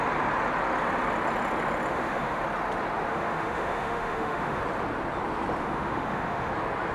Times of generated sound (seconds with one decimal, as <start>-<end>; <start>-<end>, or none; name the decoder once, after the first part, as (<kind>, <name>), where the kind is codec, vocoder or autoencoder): 1.9-2.4 (autoencoder, DAC-VAE); 3.1-4.6; 5.6-6.5